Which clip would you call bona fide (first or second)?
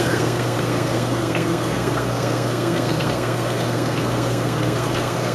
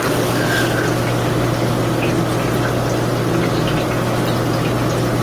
second